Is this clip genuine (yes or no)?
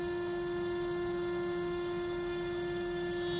yes